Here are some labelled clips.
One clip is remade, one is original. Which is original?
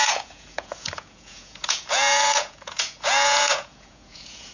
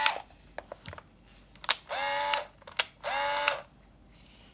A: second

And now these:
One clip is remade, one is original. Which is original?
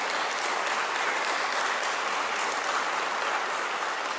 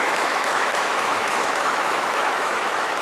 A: first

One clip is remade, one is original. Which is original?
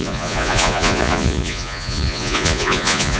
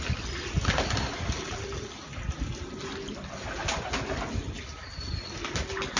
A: second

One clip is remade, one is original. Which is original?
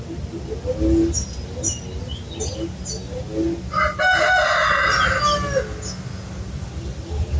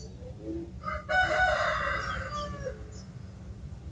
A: first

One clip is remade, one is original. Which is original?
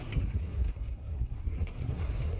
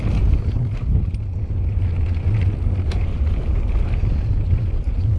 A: second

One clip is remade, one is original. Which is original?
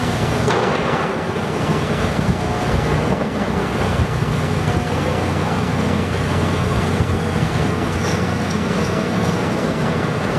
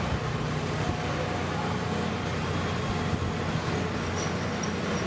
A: second